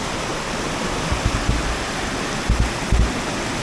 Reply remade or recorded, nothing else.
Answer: recorded